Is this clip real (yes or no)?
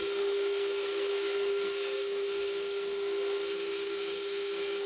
no